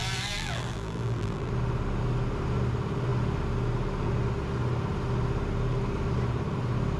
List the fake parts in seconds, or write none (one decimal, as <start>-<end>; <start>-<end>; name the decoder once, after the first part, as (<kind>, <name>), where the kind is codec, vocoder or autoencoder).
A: 0.0-1.5 (vocoder, BigVGAN v2)